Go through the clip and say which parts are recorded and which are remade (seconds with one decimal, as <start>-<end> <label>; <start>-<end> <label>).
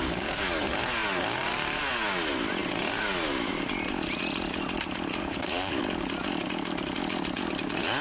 0.0-0.6 remade; 0.6-5.2 recorded; 5.2-5.8 remade; 5.8-8.0 recorded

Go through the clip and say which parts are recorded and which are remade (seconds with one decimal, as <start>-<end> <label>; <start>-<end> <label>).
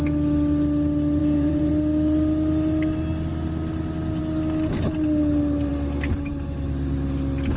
0.0-1.2 recorded; 1.2-1.7 remade; 1.7-7.6 recorded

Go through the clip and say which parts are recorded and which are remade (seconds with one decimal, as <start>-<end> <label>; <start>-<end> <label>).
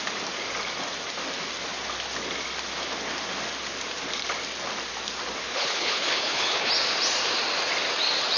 0.0-5.4 recorded; 5.4-6.7 remade; 6.7-8.4 recorded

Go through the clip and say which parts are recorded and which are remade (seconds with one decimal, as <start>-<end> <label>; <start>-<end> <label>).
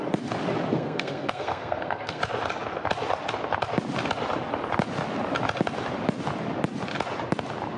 0.0-0.7 recorded; 0.7-2.2 remade; 2.2-7.8 recorded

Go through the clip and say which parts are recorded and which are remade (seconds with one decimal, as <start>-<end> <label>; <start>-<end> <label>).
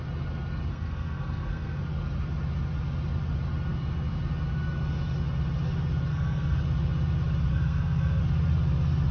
0.0-0.7 recorded; 0.7-1.8 remade; 1.8-6.1 recorded; 6.1-6.6 remade; 6.6-7.5 recorded; 7.5-8.2 remade; 8.2-9.1 recorded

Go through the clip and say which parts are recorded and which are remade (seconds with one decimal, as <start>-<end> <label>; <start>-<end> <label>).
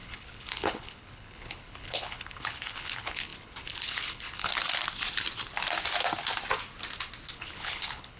0.0-4.5 remade; 4.5-7.3 recorded; 7.3-8.2 remade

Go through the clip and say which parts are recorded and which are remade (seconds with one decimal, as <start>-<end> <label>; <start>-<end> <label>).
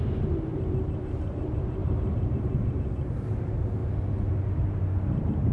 0.0-0.5 recorded; 0.5-2.8 remade; 2.8-5.5 recorded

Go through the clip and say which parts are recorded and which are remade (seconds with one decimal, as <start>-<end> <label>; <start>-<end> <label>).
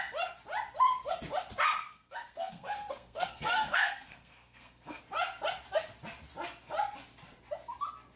0.0-1.8 recorded; 1.8-5.0 remade; 5.0-8.2 recorded